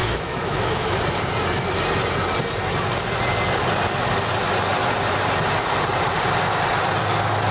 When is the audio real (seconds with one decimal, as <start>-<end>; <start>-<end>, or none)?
1.0-7.5